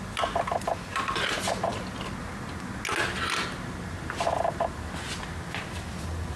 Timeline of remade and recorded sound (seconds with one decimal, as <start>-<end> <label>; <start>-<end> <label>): 0.0-1.7 remade; 1.7-5.5 recorded; 5.5-6.4 remade